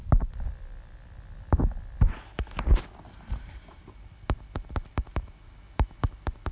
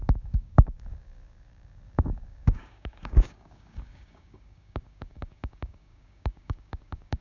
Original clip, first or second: first